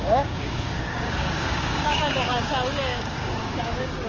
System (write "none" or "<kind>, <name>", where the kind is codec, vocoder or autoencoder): codec, DAC